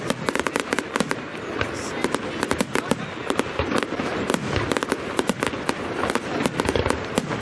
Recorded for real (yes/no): yes